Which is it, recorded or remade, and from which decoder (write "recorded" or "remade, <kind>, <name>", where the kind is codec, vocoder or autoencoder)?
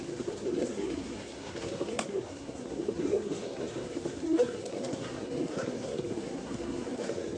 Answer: remade, codec, SNAC